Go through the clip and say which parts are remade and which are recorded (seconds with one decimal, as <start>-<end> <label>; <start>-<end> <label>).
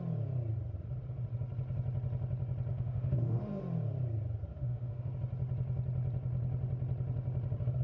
0.0-2.7 recorded; 2.7-3.6 remade; 3.6-4.5 recorded; 4.5-5.1 remade; 5.1-7.8 recorded